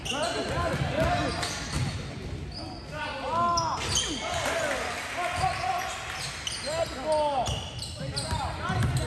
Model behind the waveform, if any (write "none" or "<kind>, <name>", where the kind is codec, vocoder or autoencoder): none